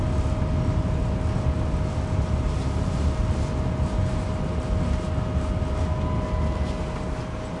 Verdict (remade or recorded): recorded